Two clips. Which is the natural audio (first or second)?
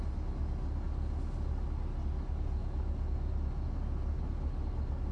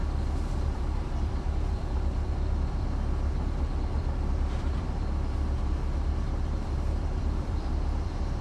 first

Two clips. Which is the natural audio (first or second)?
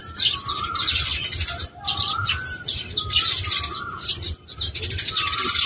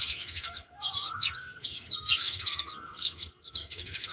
first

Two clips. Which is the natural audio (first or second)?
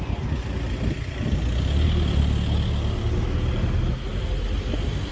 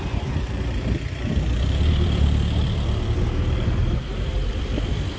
first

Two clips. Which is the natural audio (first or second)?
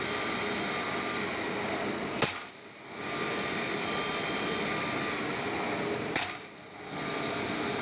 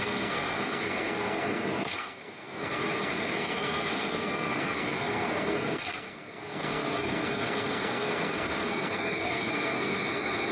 first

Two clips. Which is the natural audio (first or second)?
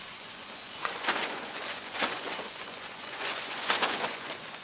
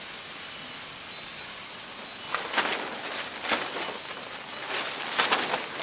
second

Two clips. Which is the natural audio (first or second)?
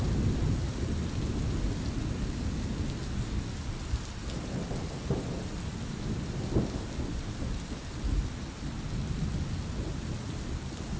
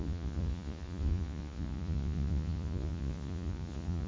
first